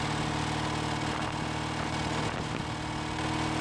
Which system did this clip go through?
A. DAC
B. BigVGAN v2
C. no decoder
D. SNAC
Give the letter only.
C